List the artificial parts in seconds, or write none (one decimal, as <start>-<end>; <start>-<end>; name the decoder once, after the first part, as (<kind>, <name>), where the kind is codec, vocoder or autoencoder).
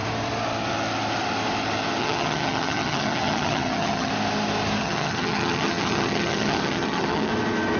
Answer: 2.0-4.1 (vocoder, HiFi-GAN); 4.8-7.3